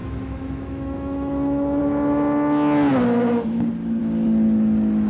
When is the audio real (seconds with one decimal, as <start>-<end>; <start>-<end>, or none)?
1.8-5.1